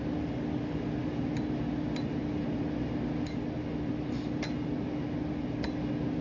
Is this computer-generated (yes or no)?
no